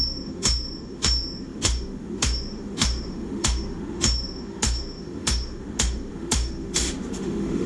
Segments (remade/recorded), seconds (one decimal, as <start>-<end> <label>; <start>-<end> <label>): 0.0-7.7 remade

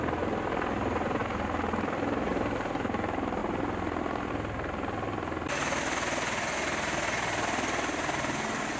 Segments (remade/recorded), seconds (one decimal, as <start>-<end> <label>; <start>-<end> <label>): 0.0-8.8 recorded

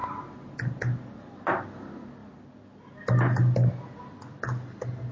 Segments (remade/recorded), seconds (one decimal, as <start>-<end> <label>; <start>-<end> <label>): 0.0-5.1 recorded

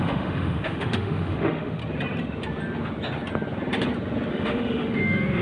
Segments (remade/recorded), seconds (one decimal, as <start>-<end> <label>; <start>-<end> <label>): 0.0-1.8 remade; 1.8-4.3 recorded; 4.3-5.4 remade

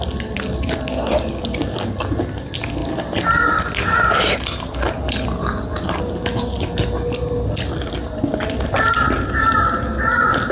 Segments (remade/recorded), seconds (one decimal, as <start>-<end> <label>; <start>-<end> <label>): 0.0-10.5 recorded

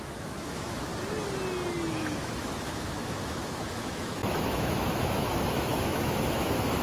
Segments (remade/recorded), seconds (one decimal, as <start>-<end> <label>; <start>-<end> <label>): 0.0-0.9 remade; 0.9-1.9 recorded; 1.9-6.8 remade

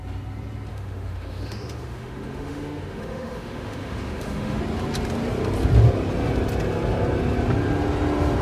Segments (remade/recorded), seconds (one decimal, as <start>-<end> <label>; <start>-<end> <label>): 0.0-0.7 recorded; 0.7-4.6 remade; 4.6-8.4 recorded

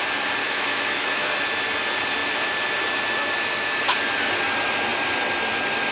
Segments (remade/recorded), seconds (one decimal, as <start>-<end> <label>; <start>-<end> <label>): 0.0-0.4 recorded; 0.4-1.3 remade; 1.3-5.9 recorded